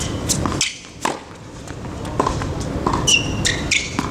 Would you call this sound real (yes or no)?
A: yes